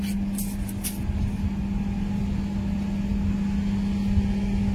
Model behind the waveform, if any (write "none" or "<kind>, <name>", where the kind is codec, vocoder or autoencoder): none